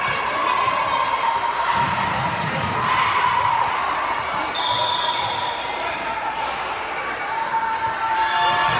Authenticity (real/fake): fake